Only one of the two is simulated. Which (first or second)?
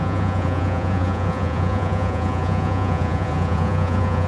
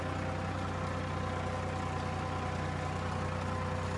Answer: first